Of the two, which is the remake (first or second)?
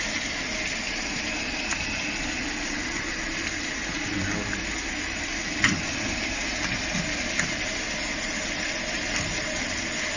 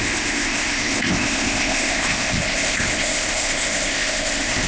second